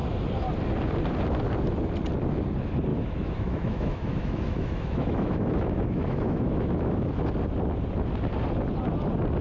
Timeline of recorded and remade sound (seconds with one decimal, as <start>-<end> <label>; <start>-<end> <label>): 0.0-2.9 recorded; 2.9-7.2 remade; 7.2-9.4 recorded